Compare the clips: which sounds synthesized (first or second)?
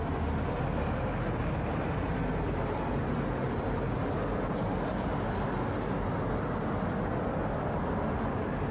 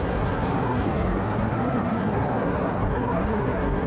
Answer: second